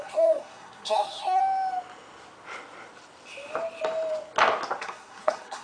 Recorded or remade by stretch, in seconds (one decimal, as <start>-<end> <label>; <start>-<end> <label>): 0.0-1.4 remade; 1.4-4.8 recorded; 4.8-5.6 remade